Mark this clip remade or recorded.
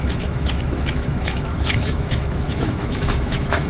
remade